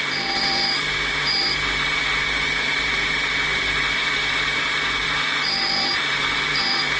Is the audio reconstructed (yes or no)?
yes